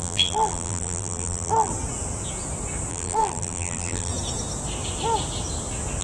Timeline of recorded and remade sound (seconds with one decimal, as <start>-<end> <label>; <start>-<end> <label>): 0.0-1.7 remade; 1.7-2.9 recorded; 2.9-4.1 remade; 4.1-6.0 recorded